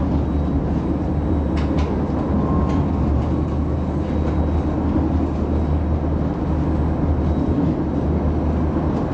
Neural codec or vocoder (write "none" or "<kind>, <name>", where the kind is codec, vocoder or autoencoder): none